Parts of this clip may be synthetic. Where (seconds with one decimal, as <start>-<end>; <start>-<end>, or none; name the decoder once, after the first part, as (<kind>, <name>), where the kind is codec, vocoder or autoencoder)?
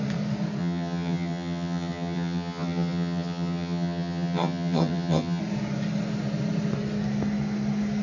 0.6-5.4 (vocoder, HiFi-GAN)